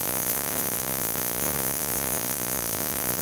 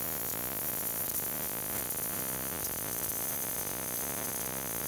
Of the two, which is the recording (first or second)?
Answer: second